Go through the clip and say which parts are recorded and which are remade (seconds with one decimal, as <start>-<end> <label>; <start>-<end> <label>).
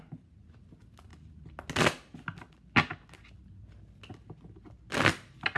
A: 0.0-5.6 recorded